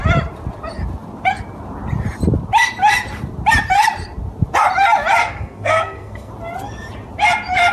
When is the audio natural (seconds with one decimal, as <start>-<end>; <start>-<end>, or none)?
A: 0.0-5.2; 6.3-7.7